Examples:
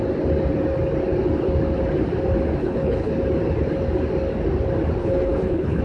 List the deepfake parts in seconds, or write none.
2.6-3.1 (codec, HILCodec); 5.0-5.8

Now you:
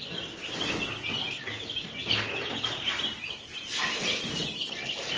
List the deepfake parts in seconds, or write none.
none